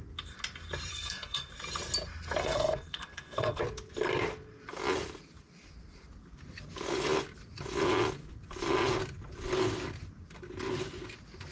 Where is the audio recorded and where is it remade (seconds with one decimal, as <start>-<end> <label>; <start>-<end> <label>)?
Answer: 0.0-0.9 recorded; 0.9-1.5 remade; 1.5-2.4 recorded; 2.4-3.6 remade; 3.6-11.5 recorded